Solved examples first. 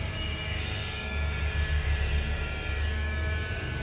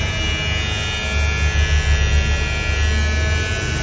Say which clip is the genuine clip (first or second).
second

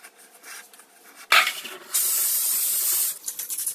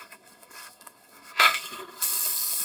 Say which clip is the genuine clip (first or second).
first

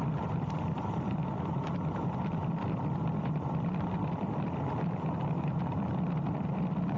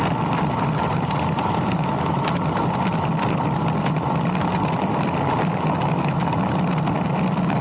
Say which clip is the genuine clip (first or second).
second